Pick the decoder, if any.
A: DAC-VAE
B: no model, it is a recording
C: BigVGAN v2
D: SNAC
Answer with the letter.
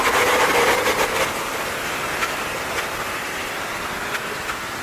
B